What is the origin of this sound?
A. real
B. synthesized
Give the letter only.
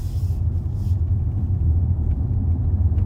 A